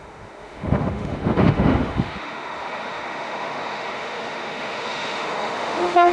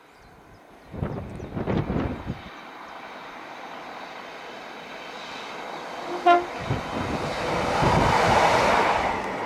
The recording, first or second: second